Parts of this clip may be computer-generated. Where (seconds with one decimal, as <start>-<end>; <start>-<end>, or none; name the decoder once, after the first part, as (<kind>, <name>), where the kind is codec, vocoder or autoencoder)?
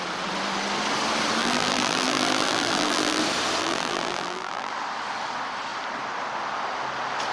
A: 1.4-3.2 (vocoder, BigVGAN v2); 3.6-4.7